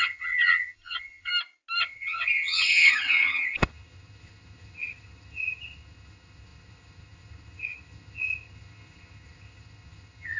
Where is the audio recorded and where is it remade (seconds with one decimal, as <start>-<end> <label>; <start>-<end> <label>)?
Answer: 0.0-1.3 remade; 1.3-1.8 recorded; 1.8-10.4 remade